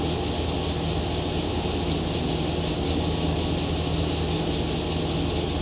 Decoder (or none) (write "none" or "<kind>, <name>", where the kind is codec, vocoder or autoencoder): none